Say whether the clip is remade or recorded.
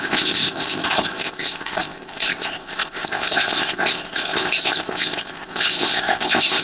remade